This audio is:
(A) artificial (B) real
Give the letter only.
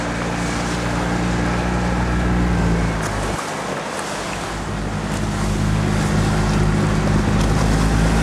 B